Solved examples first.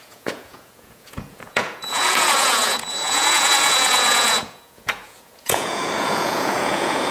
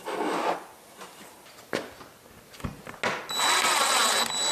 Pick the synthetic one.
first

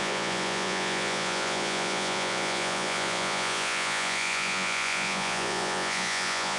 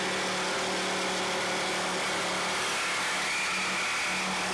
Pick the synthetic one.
first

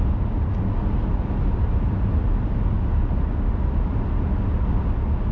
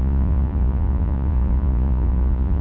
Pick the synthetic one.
second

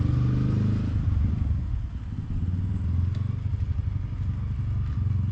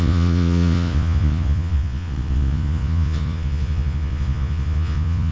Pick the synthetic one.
second